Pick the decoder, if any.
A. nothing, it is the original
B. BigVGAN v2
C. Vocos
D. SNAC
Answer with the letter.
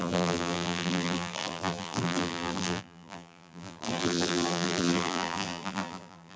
B